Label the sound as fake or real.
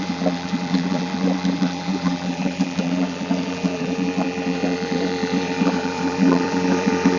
fake